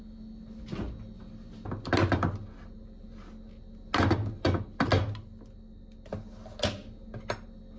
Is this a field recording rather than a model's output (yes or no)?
yes